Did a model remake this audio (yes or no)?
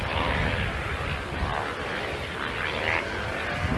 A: no